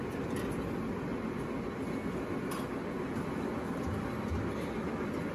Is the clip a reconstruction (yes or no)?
no